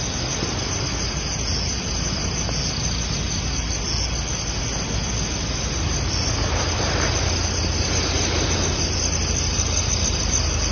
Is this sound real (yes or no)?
yes